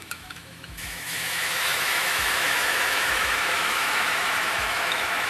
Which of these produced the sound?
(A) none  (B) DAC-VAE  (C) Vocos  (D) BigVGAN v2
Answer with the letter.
B